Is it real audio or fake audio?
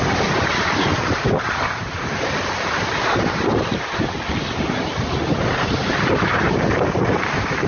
real